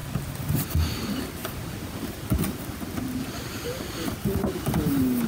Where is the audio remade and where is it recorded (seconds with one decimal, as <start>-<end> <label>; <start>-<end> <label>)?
0.0-0.7 remade; 0.7-1.4 recorded; 1.4-4.6 remade; 4.6-5.3 recorded